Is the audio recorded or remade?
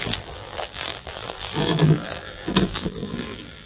remade